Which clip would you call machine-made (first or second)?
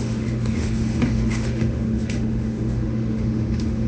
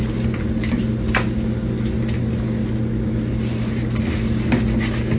first